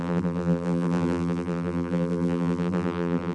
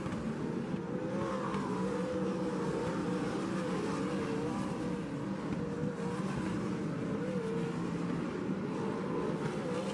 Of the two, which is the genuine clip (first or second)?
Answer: second